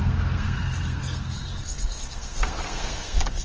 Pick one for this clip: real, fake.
fake